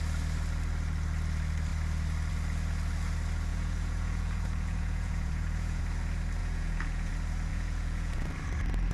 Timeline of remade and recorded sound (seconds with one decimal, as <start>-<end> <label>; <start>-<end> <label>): 0.0-3.5 recorded; 3.5-5.8 remade; 5.8-6.4 recorded; 6.4-7.1 remade; 7.1-7.5 recorded; 7.5-8.3 remade; 8.3-8.9 recorded